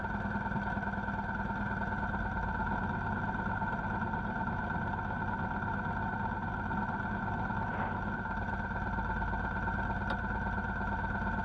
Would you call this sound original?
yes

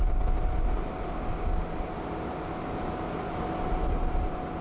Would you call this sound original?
yes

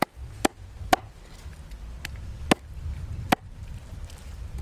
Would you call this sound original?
yes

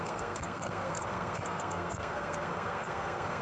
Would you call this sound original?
no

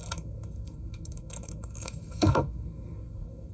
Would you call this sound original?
no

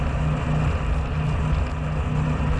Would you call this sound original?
yes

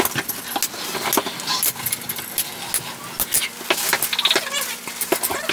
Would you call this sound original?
yes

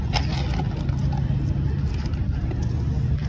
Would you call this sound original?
yes